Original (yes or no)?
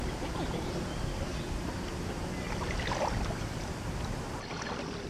yes